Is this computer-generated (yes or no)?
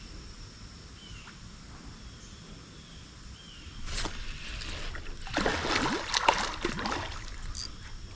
no